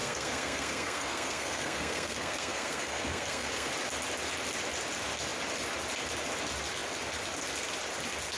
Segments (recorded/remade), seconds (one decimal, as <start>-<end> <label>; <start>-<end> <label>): 0.0-3.7 remade; 3.7-8.4 recorded